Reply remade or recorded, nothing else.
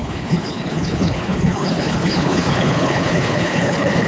remade